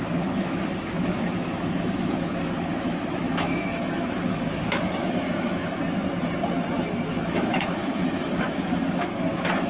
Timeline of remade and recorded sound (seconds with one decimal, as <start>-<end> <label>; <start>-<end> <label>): 0.0-5.8 remade; 5.8-7.1 recorded; 7.1-9.7 remade